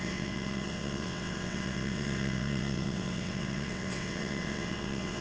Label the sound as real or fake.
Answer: fake